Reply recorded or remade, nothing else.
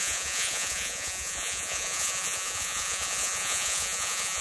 remade